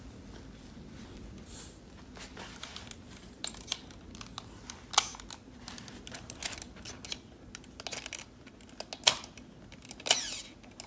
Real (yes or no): yes